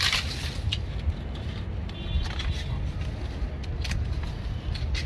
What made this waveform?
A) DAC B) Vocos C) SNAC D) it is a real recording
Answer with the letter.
D